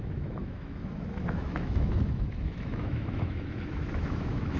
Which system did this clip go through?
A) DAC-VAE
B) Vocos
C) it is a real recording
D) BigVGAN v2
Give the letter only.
A